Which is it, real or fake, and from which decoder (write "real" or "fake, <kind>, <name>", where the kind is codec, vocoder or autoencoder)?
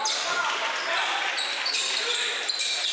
real